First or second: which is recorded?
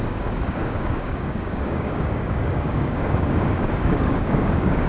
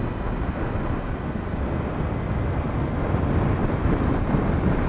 second